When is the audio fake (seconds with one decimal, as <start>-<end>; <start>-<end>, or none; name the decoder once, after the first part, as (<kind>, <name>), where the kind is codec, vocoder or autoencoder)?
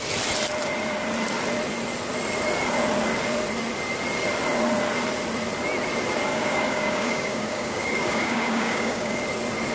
6.3-9.2 (codec, DAC)